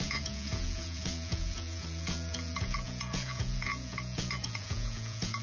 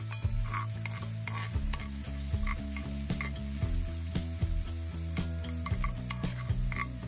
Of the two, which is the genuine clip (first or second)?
second